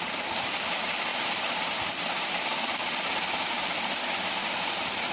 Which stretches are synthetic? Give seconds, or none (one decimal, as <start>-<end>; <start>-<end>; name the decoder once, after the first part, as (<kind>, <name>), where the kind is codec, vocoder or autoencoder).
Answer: none